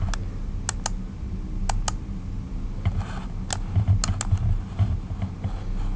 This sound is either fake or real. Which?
real